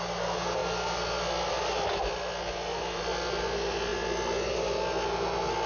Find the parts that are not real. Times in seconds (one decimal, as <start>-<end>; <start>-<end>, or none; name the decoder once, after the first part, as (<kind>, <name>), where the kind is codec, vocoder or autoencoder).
none